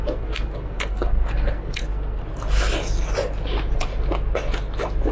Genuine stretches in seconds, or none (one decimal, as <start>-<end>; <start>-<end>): 2.2-5.1